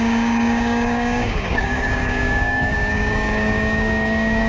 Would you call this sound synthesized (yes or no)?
yes